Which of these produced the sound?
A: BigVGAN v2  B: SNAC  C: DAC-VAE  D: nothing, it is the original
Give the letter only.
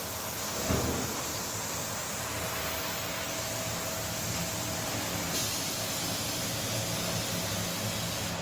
D